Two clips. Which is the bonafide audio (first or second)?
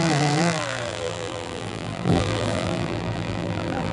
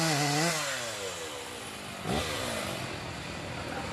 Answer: second